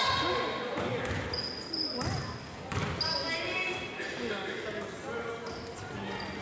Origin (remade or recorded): recorded